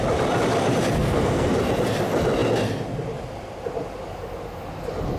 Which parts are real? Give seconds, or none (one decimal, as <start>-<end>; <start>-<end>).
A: 0.0-1.0; 1.5-5.2